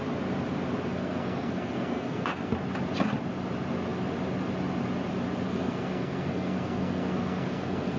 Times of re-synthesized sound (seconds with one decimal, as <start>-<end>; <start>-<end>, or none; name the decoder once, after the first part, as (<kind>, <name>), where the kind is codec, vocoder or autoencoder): 0.9-2.5 (codec, SNAC); 5.5-8.0